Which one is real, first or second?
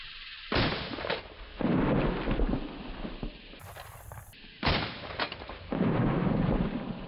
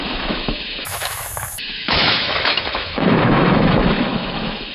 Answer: first